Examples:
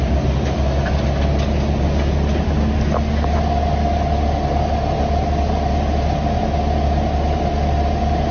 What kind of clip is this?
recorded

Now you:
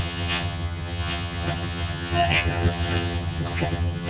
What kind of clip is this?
remade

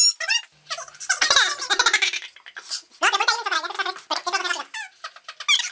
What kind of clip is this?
recorded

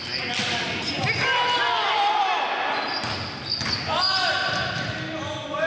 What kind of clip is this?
recorded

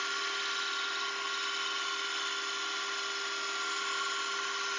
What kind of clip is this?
recorded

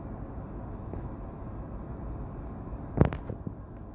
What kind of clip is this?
recorded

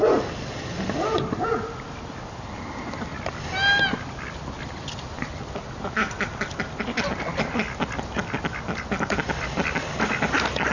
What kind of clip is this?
recorded